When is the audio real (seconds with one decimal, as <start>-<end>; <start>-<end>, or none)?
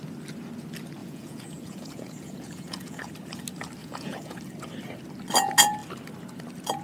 0.0-1.0; 3.1-3.8; 4.4-6.8